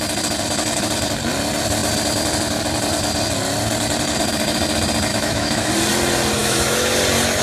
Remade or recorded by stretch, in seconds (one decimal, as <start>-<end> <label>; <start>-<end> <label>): 0.0-5.1 recorded; 5.1-5.7 remade; 5.7-6.4 recorded; 6.4-6.9 remade; 6.9-7.4 recorded